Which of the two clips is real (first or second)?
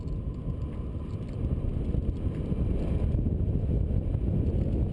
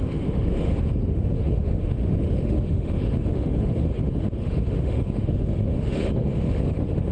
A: first